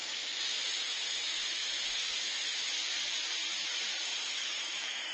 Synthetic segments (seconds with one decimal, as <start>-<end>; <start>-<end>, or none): 0.0-2.7; 4.1-5.1